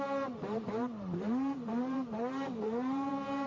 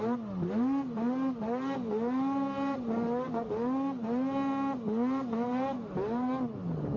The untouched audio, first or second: second